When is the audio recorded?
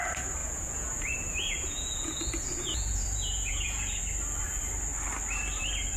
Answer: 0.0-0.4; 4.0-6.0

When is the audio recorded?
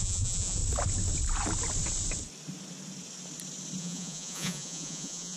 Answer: 0.6-3.8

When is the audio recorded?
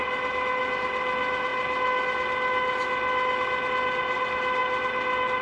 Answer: 0.0-5.4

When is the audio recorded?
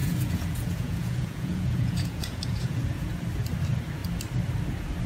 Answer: 3.1-5.1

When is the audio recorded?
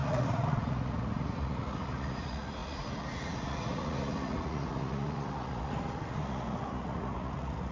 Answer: none